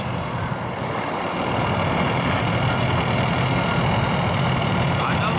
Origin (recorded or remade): recorded